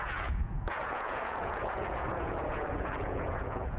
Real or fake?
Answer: fake